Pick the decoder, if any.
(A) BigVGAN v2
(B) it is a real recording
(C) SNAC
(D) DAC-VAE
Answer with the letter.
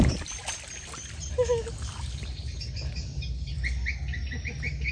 B